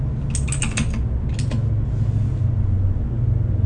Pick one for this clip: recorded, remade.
recorded